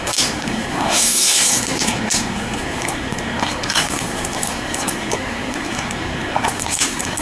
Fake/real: fake